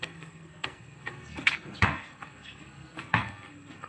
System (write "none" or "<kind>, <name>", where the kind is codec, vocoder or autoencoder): codec, SNAC